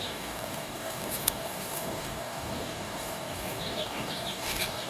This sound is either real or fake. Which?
fake